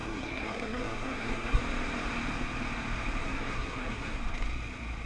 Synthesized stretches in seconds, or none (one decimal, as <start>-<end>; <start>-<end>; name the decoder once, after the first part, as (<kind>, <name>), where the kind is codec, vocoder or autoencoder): 0.0-1.6 (codec, SNAC); 3.2-4.2

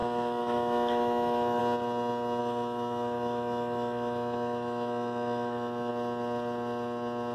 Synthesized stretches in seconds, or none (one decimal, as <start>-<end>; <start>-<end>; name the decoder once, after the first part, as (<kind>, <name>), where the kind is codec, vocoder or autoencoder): 0.0-1.6 (autoencoder, DAC-VAE); 2.4-5.9

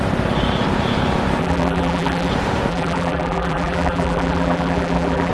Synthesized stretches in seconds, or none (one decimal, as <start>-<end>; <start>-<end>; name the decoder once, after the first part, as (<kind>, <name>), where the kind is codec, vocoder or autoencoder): 1.4-2.3 (vocoder, BigVGAN v2); 2.7-5.3

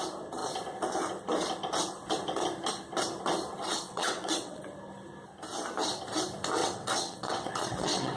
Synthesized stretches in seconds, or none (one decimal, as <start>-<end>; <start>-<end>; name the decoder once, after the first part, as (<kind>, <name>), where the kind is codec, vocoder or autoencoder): 3.7-4.6 (vocoder, WaveNeXt); 6.6-8.2

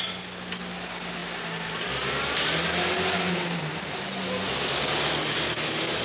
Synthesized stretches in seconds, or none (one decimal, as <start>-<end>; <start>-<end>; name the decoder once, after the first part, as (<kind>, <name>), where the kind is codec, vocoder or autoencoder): none